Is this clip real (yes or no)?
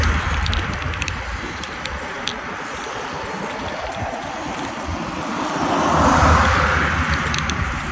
no